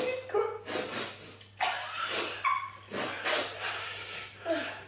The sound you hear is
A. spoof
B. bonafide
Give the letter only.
B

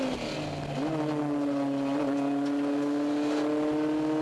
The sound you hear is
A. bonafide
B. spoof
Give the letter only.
A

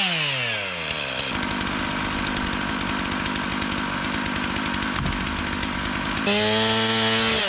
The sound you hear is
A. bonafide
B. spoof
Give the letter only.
A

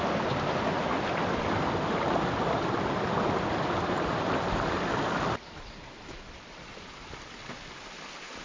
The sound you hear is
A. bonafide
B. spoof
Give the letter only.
A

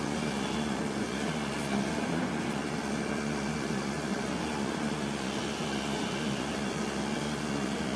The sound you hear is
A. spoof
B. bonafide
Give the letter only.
A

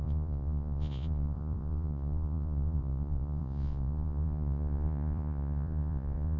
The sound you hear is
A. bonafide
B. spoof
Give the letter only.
B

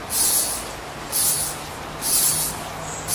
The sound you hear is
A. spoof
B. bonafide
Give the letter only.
B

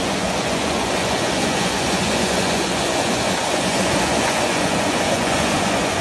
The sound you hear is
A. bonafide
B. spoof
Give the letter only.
B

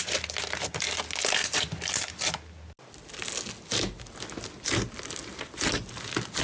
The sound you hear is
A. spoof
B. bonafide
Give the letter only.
B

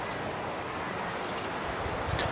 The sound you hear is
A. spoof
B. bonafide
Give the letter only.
B